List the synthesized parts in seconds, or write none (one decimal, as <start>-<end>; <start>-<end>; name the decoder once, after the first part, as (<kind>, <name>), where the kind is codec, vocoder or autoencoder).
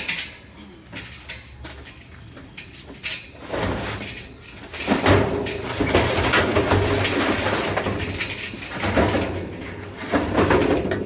none